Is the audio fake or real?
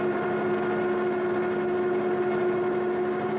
real